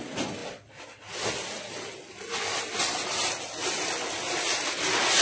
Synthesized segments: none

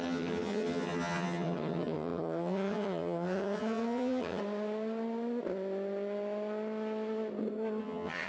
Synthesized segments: 0.0-4.4 (vocoder, HiFi-GAN); 7.8-8.3